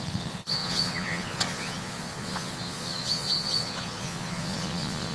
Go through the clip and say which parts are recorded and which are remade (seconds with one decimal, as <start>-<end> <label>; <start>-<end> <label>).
0.0-5.1 remade